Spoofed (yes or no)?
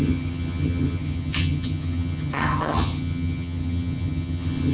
yes